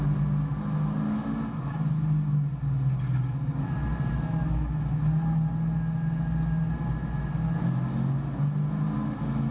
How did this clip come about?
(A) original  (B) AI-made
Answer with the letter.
A